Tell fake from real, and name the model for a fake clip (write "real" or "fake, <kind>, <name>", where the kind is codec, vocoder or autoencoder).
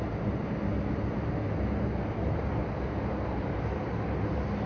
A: real